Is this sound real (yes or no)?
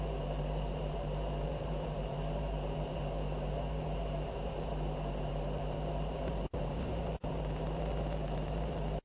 no